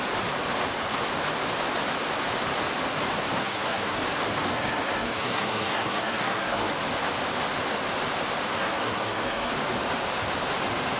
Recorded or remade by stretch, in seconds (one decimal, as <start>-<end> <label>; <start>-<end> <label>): 0.0-3.4 recorded; 3.4-4.0 remade; 4.0-4.5 recorded; 4.5-6.7 remade; 6.7-8.5 recorded; 8.5-9.5 remade; 9.5-11.0 recorded